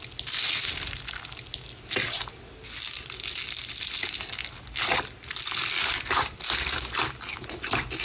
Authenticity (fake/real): real